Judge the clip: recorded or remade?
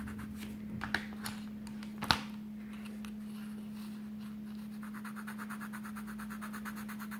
recorded